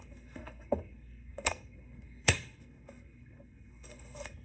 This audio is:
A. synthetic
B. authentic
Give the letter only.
A